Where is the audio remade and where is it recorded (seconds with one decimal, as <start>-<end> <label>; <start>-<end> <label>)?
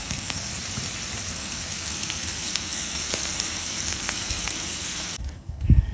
0.0-0.5 remade; 0.5-1.3 recorded; 1.3-5.9 remade